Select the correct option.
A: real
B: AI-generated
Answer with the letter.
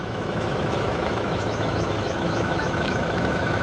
B